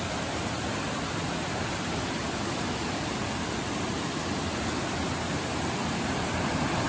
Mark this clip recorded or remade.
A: recorded